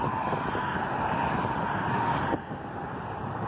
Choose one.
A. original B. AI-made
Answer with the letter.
A